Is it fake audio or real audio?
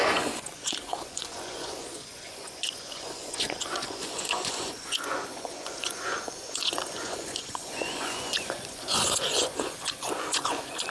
fake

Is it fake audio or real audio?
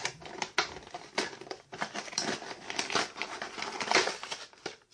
real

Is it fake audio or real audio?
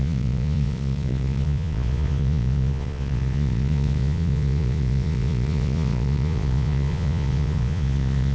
fake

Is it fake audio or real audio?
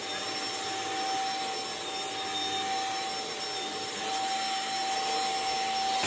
real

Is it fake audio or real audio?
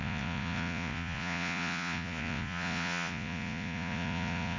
fake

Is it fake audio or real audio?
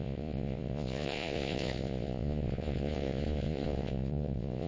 fake